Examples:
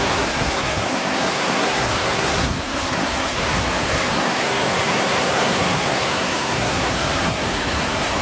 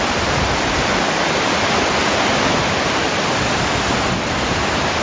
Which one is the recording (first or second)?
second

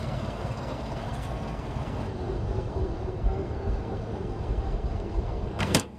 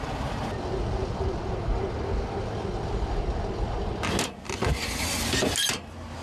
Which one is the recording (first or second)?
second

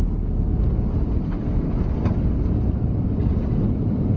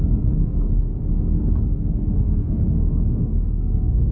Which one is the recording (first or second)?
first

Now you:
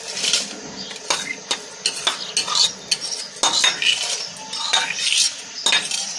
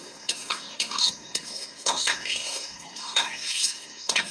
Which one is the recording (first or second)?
first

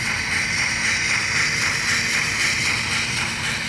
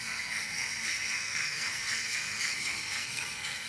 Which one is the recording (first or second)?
first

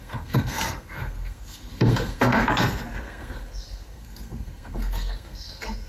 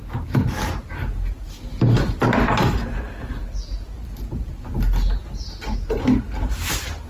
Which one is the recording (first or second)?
second